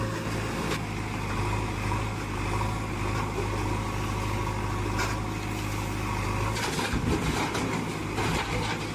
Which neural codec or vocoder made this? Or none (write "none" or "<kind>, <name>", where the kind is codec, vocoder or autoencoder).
none